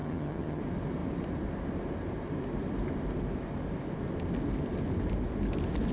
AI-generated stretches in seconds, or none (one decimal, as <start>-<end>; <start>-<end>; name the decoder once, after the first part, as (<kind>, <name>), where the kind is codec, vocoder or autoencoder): 0.0-0.6 (vocoder, HiFi-GAN)